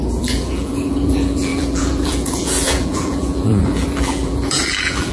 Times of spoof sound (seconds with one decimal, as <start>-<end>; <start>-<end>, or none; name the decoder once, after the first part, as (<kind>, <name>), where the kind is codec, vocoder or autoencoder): 0.0-5.1 (vocoder, BigVGAN v2)

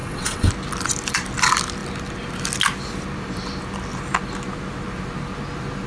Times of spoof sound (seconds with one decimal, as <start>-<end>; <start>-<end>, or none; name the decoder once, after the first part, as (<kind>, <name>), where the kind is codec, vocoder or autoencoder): 0.0-0.5 (vocoder, WaveNeXt)

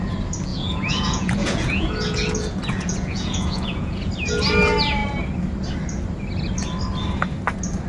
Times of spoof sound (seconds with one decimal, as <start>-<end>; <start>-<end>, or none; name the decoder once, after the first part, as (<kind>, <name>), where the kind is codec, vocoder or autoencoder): 0.5-4.1 (vocoder, Vocos)

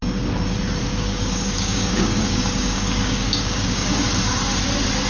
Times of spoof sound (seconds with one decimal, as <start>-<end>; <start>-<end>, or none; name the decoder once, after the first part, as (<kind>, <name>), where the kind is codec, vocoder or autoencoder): 0.9-4.0 (codec, DAC)

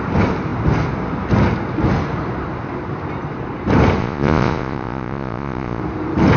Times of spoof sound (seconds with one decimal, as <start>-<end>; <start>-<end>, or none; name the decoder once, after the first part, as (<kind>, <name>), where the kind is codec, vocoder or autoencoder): 4.0-5.8 (vocoder, Vocos)